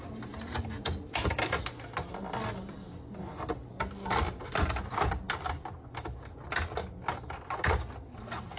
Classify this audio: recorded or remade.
recorded